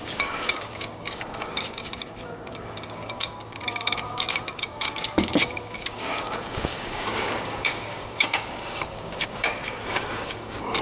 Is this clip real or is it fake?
fake